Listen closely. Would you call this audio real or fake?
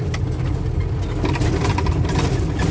real